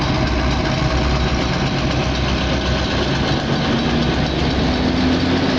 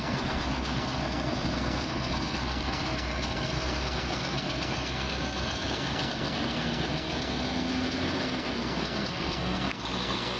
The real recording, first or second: first